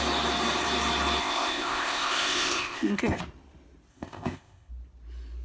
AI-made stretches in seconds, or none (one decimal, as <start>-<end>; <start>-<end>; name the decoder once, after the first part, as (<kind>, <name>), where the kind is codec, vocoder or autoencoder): 1.2-3.2 (codec, ZipCodec); 3.9-4.7